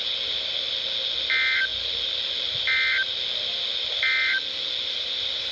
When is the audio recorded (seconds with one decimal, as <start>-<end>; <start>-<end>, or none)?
0.0-5.5